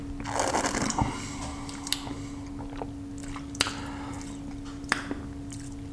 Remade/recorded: recorded